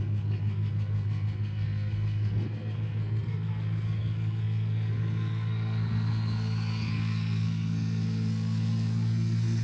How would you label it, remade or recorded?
remade